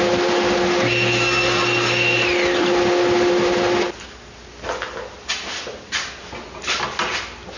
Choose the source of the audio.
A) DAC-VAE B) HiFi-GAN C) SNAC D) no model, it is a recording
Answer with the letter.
D